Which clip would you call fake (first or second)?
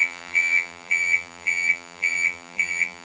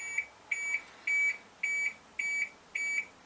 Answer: first